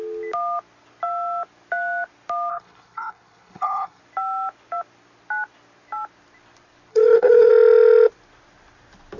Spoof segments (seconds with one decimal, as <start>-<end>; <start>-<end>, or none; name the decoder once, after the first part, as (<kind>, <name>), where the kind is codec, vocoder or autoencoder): 2.5-4.0 (codec, HILCodec); 6.9-7.5